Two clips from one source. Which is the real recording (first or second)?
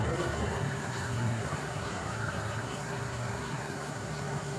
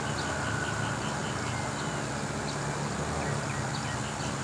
second